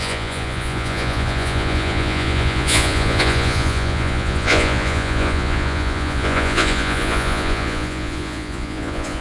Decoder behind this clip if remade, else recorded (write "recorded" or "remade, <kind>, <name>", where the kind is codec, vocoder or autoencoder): remade, vocoder, Vocos